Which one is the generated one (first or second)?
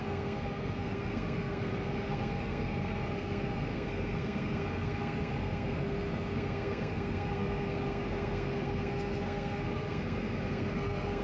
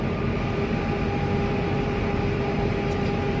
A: first